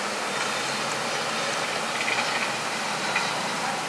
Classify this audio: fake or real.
real